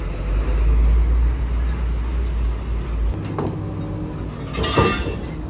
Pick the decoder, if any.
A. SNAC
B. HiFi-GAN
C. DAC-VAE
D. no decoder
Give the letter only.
D